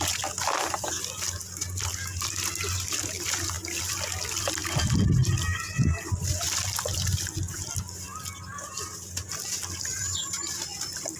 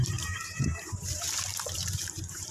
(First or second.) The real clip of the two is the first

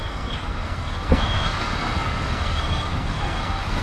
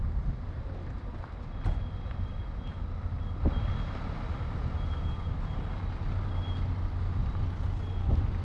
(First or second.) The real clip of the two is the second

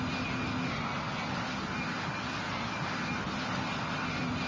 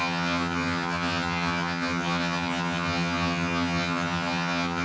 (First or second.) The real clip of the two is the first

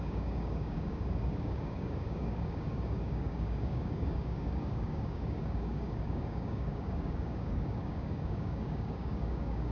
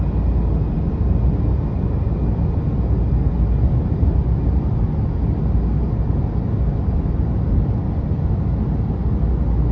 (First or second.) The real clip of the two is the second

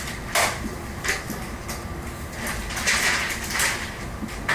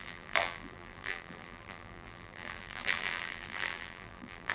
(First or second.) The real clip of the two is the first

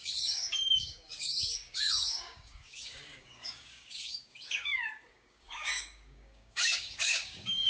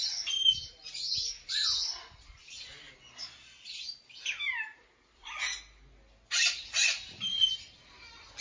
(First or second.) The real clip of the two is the second